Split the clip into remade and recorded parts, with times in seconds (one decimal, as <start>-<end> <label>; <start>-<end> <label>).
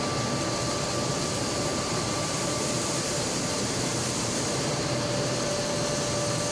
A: 0.0-1.7 recorded; 1.7-4.8 remade; 4.8-6.5 recorded